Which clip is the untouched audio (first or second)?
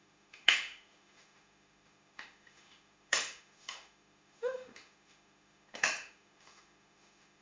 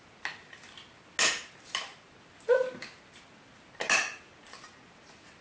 second